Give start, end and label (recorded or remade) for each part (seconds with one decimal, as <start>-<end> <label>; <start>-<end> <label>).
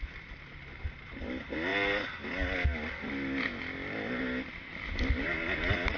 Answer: 0.0-6.0 recorded